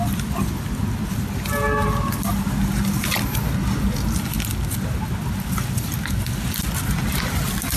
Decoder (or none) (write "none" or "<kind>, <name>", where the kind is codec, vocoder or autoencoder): none